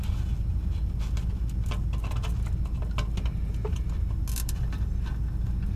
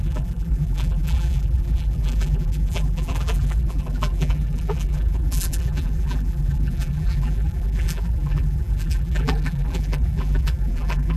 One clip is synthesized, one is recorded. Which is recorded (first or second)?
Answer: first